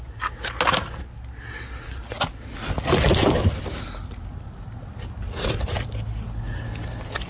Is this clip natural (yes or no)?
yes